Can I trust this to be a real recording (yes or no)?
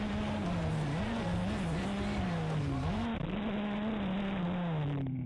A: yes